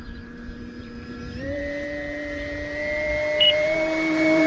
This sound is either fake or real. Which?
fake